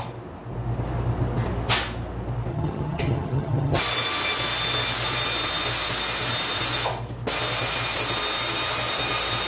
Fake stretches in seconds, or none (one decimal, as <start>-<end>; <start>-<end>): 2.5-3.8